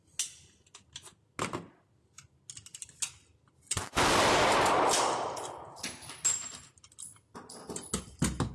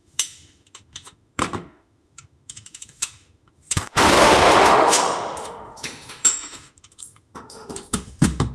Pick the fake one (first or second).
second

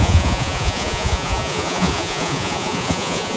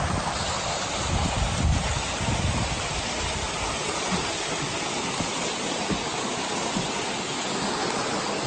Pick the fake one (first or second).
first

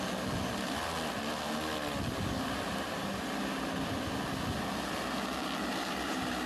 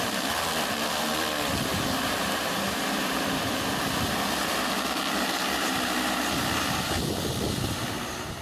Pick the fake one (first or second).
second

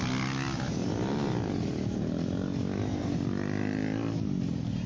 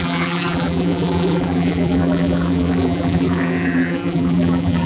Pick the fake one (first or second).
second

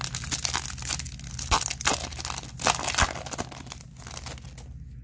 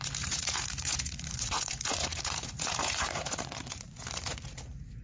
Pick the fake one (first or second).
second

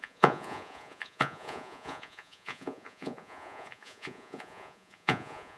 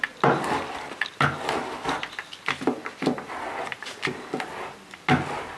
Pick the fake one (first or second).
first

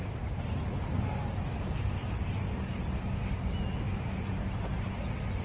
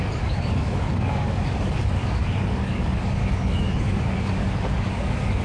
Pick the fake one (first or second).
second